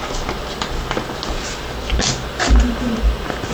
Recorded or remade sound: recorded